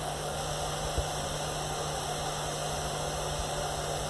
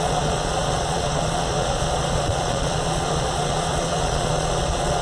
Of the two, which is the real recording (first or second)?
first